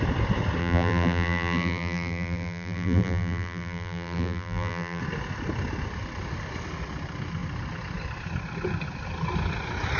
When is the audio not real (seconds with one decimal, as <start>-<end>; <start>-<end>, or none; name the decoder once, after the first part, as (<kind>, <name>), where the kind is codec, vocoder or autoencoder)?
0.6-5.0 (vocoder, BigVGAN v2)